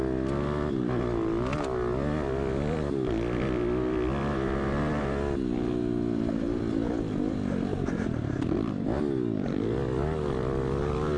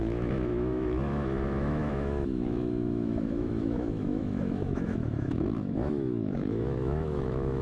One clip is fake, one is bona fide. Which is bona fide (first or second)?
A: first